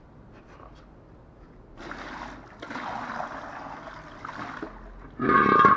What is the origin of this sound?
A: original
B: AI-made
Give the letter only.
A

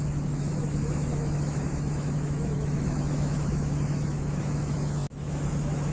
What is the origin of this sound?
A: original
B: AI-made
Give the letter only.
B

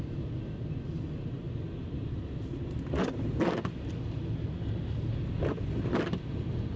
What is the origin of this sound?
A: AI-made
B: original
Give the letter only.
B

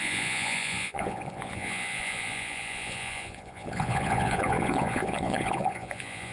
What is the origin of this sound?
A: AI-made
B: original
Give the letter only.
A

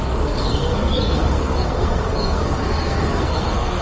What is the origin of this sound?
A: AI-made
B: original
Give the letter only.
A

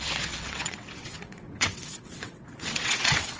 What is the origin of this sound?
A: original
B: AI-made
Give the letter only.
B